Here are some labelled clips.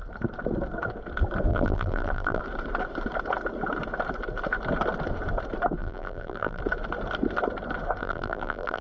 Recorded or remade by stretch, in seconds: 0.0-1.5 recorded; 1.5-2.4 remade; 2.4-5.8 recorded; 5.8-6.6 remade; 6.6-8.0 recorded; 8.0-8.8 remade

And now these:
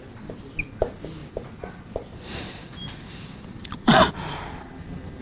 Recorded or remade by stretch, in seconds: 0.0-1.2 recorded; 1.2-4.1 remade; 4.1-5.2 recorded

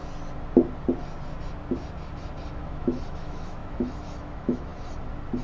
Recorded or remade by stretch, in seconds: 0.0-2.5 recorded; 2.5-4.7 remade; 4.7-5.4 recorded

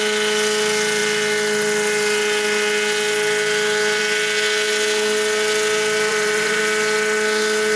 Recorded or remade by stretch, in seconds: 0.0-6.1 recorded; 6.1-6.6 remade; 6.6-7.8 recorded

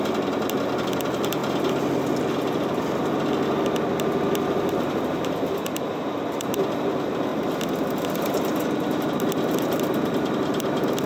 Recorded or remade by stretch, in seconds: 0.0-1.4 remade; 1.4-4.7 recorded; 4.7-7.3 remade; 7.3-9.2 recorded; 9.2-11.1 remade

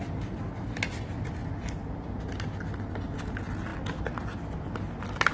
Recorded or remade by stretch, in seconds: 0.0-5.3 recorded